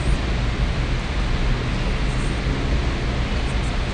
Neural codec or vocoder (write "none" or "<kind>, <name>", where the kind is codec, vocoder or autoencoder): none